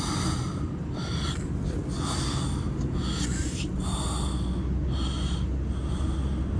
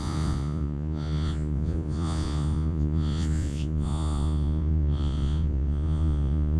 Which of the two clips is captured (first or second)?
first